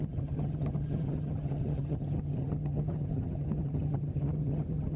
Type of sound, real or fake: fake